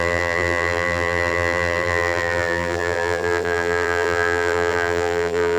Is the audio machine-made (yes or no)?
yes